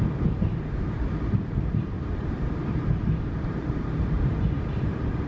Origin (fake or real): fake